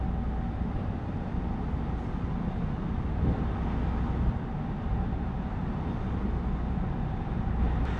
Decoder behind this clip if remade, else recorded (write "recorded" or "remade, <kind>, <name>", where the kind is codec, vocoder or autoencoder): recorded